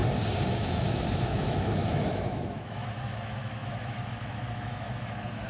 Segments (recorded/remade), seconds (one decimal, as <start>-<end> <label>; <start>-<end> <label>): 0.0-0.5 recorded; 0.5-5.5 remade